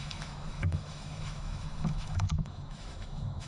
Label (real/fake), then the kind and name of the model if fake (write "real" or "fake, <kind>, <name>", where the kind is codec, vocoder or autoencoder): fake, autoencoder, DAC-VAE